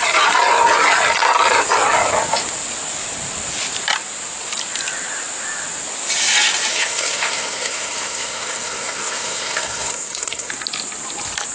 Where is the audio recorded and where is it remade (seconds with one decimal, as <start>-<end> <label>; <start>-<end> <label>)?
0.0-6.7 recorded; 6.7-10.5 remade; 10.5-11.5 recorded